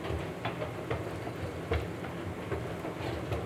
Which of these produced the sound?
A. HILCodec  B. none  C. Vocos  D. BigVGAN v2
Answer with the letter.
B